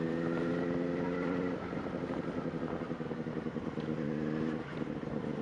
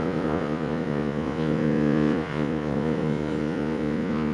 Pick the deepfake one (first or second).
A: second